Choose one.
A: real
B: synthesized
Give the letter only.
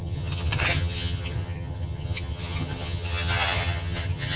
B